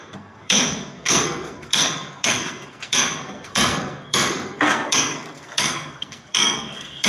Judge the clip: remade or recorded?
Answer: remade